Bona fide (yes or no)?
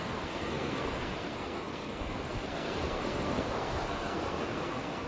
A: no